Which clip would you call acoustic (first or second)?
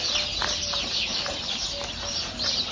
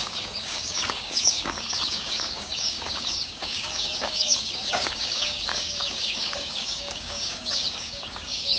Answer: first